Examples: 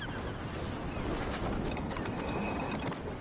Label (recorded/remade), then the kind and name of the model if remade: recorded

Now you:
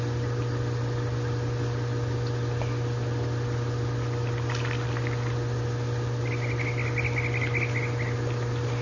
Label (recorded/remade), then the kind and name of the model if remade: recorded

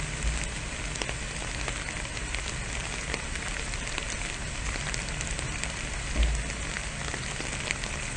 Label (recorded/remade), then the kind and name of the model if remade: recorded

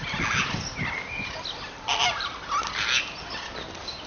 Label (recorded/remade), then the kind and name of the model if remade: recorded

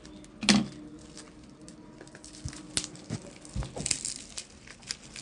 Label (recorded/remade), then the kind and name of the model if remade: recorded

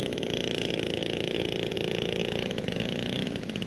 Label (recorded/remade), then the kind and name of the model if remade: remade, autoencoder, DAC-VAE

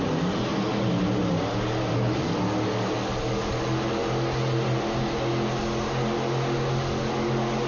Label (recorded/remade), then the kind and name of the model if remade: recorded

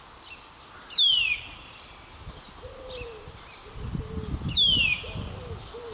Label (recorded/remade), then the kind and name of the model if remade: recorded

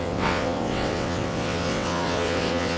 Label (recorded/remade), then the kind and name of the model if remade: remade, vocoder, WaveNeXt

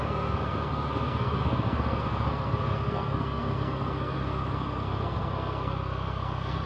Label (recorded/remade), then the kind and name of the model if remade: remade, codec, SNAC